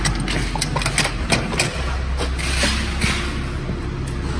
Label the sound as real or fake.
real